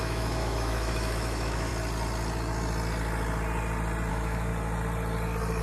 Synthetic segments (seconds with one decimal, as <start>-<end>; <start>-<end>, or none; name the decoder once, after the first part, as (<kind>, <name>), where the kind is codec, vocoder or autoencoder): 0.0-1.7 (autoencoder, DAC-VAE); 4.1-4.5